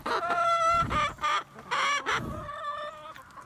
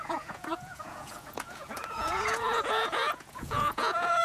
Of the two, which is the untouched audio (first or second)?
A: first